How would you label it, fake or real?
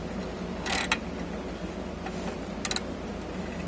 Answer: real